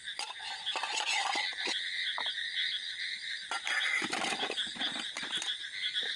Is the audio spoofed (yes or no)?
no